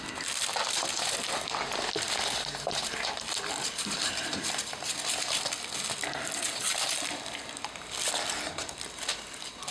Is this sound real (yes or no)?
no